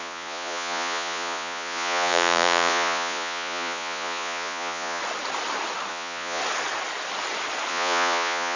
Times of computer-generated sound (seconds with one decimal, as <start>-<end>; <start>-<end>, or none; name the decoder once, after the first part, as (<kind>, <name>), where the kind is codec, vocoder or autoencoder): 0.0-5.0 (vocoder, Vocos); 5.9-6.4; 7.7-8.6